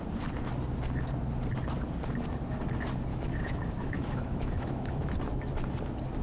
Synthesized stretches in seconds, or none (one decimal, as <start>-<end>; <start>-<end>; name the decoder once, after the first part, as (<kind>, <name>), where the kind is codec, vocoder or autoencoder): 3.1-5.1 (autoencoder, DAC-VAE)